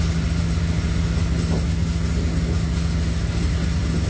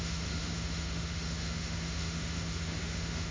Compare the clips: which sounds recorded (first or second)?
first